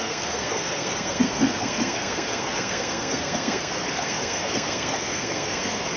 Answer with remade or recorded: remade